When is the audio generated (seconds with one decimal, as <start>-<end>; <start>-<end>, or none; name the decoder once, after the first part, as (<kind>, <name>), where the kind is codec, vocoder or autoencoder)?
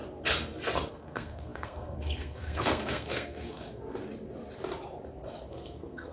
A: 0.9-3.8 (codec, SNAC); 5.5-6.1